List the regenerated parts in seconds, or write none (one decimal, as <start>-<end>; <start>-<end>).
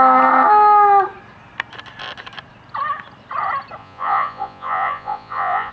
3.8-5.7